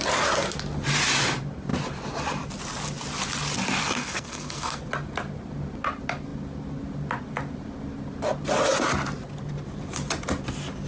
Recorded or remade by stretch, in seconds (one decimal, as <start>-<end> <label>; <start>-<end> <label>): 0.0-3.8 recorded; 3.8-4.8 remade; 4.8-10.9 recorded